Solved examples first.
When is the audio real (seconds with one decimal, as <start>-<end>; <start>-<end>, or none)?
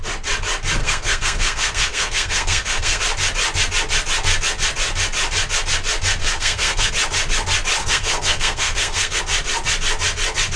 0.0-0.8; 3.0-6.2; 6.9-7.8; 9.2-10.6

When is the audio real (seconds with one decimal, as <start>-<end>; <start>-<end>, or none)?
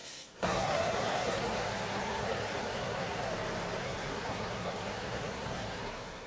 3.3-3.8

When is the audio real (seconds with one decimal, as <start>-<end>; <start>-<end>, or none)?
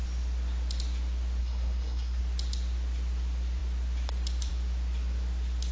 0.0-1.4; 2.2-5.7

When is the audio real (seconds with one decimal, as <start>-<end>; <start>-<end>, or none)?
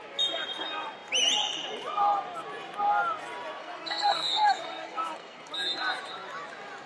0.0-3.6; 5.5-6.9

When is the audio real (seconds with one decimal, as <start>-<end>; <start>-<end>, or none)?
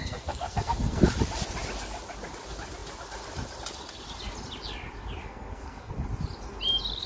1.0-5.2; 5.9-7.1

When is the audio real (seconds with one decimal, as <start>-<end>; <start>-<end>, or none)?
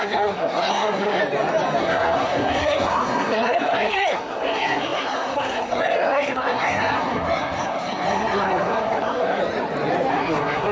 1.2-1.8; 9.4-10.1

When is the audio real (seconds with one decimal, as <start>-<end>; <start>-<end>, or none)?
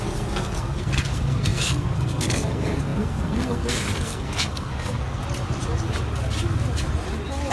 5.2-7.5